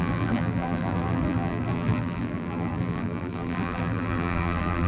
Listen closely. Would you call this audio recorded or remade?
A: remade